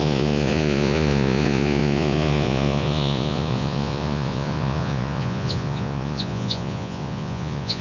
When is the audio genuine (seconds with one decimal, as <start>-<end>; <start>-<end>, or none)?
none